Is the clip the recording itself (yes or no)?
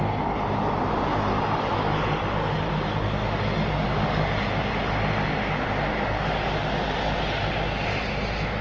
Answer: yes